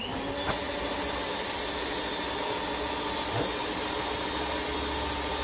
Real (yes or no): yes